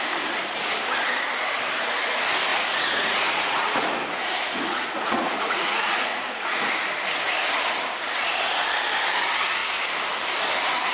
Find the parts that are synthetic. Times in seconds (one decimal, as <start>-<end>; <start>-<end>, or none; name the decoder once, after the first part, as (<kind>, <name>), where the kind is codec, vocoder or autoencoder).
2.5-6.7 (vocoder, Vocos)